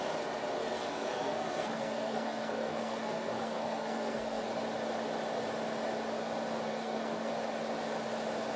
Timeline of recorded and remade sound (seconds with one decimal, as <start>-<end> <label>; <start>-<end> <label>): 0.0-0.6 recorded; 0.6-4.5 remade; 4.5-6.7 recorded; 6.7-7.3 remade; 7.3-8.6 recorded

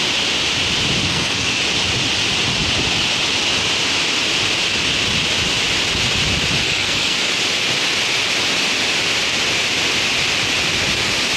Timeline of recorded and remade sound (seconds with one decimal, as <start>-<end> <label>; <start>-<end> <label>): 0.0-1.0 recorded; 1.0-1.6 remade; 1.6-6.6 recorded; 6.6-7.3 remade; 7.3-11.4 recorded

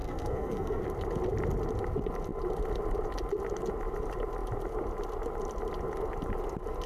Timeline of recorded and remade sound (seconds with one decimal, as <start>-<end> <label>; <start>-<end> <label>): 0.0-0.8 remade; 0.8-6.9 recorded

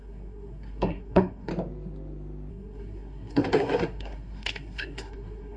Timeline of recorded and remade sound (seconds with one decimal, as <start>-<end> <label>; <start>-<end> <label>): 0.0-1.5 remade; 1.5-2.5 recorded; 2.5-5.6 remade

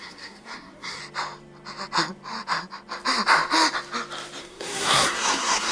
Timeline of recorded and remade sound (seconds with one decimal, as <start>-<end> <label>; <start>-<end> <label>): 0.0-1.0 remade; 1.0-4.4 recorded; 4.4-5.7 remade

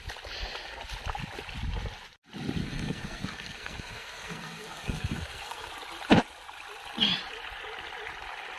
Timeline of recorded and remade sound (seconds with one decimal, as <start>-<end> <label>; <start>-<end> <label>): 0.0-2.6 recorded; 2.6-5.7 remade; 5.7-8.6 recorded